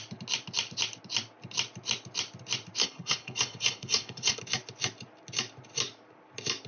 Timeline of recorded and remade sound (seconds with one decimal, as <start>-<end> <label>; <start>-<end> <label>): 0.0-2.8 recorded; 2.8-4.4 remade; 4.4-6.7 recorded